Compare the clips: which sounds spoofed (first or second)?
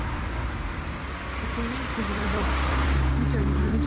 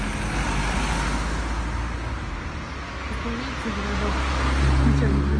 first